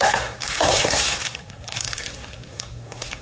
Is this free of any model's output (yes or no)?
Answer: no